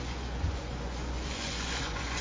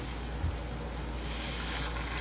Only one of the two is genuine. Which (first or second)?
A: second